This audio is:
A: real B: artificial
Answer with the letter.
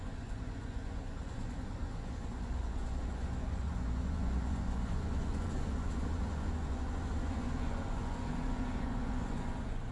B